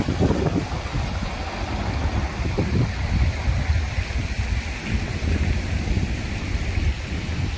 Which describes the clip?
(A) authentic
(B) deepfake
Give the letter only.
A